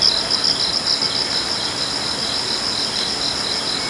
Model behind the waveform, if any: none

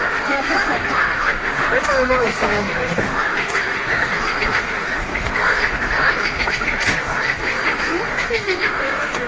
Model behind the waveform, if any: autoencoder, DAC-VAE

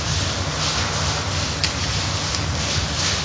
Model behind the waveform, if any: none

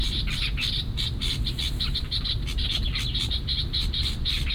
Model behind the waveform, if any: none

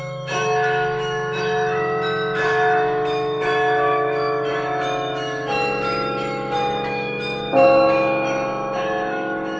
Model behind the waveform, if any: autoencoder, DAC-VAE